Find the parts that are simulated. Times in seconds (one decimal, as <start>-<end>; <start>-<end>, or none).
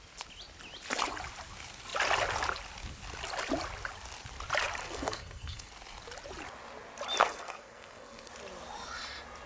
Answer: 4.8-5.7; 7.2-8.3